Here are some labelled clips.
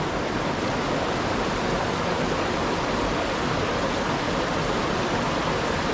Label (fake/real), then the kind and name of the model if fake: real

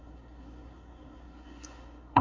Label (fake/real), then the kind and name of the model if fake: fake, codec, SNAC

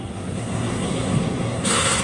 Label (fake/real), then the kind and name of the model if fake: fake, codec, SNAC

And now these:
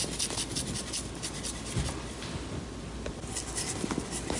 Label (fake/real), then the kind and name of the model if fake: real